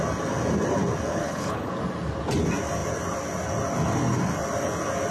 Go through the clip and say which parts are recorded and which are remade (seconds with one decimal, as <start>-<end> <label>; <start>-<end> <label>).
0.0-1.1 recorded; 1.1-1.7 remade; 1.7-5.1 recorded